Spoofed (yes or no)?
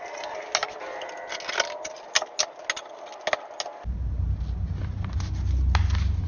no